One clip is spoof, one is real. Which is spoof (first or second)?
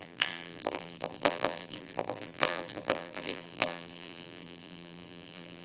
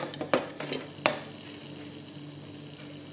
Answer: first